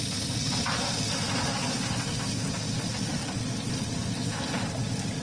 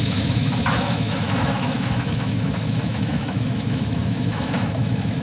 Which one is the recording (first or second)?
first